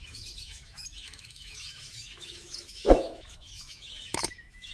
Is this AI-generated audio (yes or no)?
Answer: yes